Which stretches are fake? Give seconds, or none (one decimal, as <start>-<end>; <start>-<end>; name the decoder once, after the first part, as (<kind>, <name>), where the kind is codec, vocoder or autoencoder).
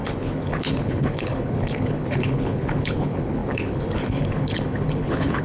0.0-5.4 (codec, HILCodec)